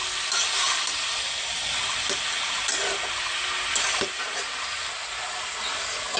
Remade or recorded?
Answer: recorded